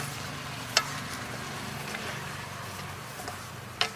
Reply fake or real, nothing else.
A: real